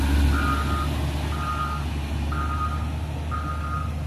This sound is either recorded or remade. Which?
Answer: recorded